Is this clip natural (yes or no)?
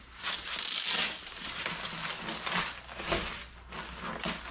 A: yes